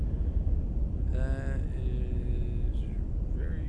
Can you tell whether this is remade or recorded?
recorded